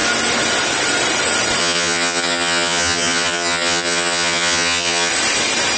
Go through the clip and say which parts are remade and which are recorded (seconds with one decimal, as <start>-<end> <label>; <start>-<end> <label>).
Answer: 0.0-1.6 recorded; 1.6-5.1 remade; 5.1-5.8 recorded

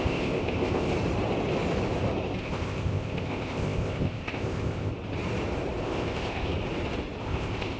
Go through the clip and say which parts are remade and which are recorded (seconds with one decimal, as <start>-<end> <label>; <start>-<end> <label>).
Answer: 0.0-0.9 remade; 0.9-2.4 recorded; 2.4-4.9 remade; 4.9-5.8 recorded; 5.8-6.5 remade; 6.5-7.2 recorded; 7.2-7.8 remade

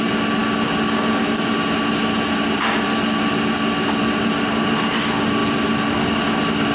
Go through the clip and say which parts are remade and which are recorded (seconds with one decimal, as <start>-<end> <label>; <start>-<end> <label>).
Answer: 0.0-5.4 recorded; 5.4-6.1 remade; 6.1-6.7 recorded